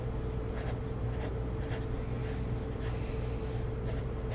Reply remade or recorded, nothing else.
recorded